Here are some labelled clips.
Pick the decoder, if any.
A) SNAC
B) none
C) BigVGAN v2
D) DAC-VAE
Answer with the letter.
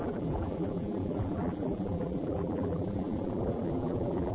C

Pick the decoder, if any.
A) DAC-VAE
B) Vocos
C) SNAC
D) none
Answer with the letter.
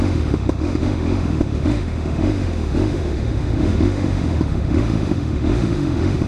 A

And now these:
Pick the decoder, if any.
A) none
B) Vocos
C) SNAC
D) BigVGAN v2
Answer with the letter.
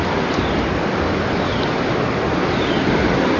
A